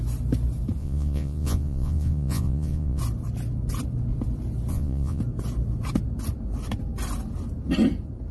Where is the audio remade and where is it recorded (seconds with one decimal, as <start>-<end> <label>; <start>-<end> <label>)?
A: 0.0-0.8 recorded; 0.8-3.0 remade; 3.0-4.7 recorded; 4.7-5.2 remade; 5.2-8.3 recorded